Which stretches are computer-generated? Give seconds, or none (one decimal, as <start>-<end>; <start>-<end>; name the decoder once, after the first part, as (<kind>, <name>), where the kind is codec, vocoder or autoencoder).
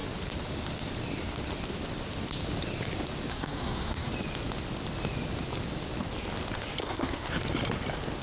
3.3-4.1 (codec, SNAC); 6.8-7.3